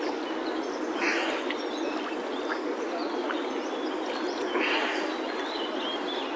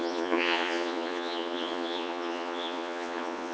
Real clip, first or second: first